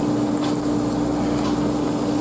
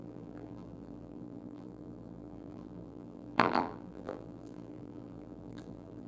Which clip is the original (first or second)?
first